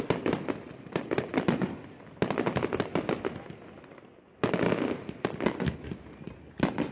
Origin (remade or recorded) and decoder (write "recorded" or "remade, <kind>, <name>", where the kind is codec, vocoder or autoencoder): recorded